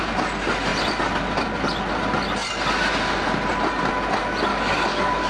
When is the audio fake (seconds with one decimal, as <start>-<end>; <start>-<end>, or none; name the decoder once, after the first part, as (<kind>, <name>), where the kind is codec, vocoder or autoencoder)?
4.5-5.3 (codec, DAC)